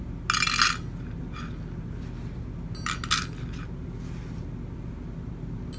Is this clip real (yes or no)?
yes